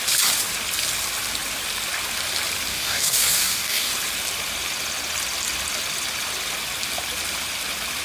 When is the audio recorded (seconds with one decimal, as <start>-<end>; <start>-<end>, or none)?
0.0-2.7; 3.9-8.0